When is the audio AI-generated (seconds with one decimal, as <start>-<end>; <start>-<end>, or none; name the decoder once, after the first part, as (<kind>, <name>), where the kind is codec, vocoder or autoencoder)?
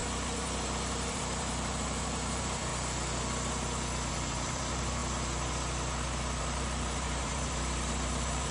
0.0-2.7 (vocoder, BigVGAN v2); 4.1-5.0; 6.4-8.5